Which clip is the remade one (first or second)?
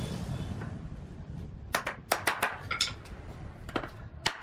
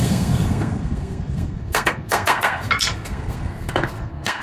second